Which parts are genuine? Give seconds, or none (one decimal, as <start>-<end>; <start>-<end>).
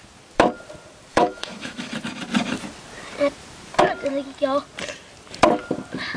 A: 0.0-1.1; 1.9-6.2